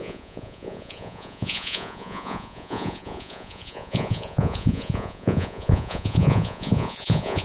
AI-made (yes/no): yes